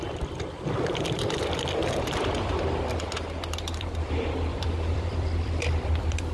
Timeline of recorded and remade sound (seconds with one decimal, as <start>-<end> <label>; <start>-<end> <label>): 0.0-6.3 remade